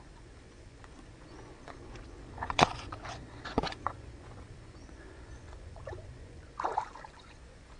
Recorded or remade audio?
remade